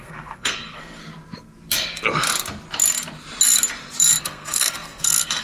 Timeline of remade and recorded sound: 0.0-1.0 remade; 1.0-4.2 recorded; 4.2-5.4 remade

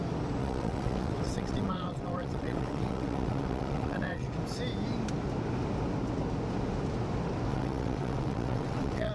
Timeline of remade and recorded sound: 0.0-0.4 recorded; 0.4-4.3 remade; 4.3-7.5 recorded; 7.5-9.1 remade

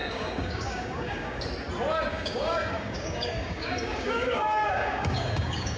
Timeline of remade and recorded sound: 0.0-1.4 remade; 1.4-2.1 recorded; 2.1-5.8 remade

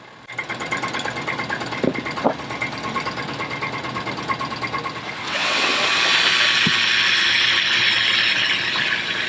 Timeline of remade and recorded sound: 0.0-5.2 recorded; 5.2-5.8 remade; 5.8-9.3 recorded